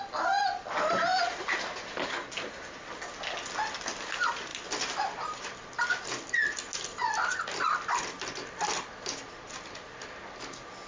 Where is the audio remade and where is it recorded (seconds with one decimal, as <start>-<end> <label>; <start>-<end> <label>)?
0.0-10.9 recorded